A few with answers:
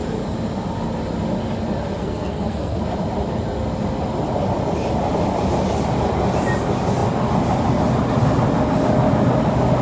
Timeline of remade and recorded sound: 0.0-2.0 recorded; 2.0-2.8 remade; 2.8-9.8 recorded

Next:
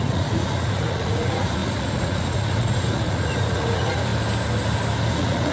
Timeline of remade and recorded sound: 0.0-4.1 remade; 4.1-5.1 recorded; 5.1-5.5 remade

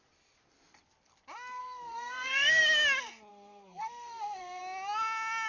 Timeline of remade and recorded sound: 0.0-1.6 recorded; 1.6-2.6 remade; 2.6-3.3 recorded; 3.3-4.6 remade; 4.6-5.5 recorded

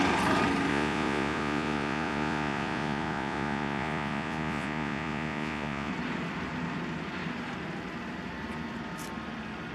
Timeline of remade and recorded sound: 0.0-0.7 recorded; 0.7-5.9 remade; 5.9-9.7 recorded

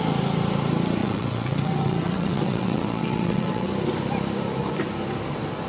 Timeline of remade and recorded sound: 0.0-1.0 recorded; 1.0-3.7 remade; 3.7-5.7 recorded